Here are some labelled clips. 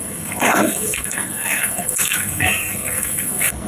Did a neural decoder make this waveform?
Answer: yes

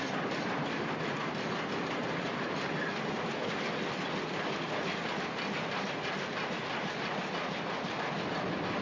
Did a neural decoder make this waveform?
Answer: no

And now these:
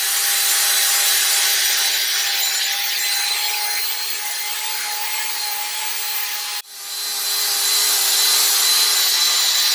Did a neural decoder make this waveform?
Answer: no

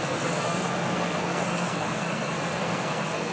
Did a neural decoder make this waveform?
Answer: yes